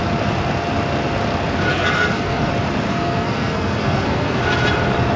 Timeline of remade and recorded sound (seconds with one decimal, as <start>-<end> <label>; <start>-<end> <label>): 0.0-1.7 recorded; 1.7-2.5 remade; 2.5-2.9 recorded; 2.9-4.4 remade; 4.4-5.2 recorded